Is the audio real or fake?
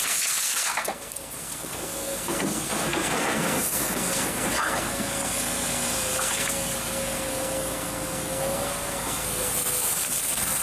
fake